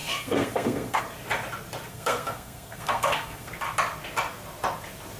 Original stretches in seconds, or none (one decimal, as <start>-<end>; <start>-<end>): 1.0-1.9; 3.5-5.2